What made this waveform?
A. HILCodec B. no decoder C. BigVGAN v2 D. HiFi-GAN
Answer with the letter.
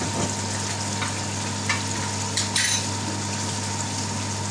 B